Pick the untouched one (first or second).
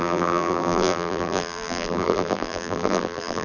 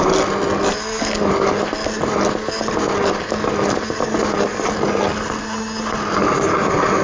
second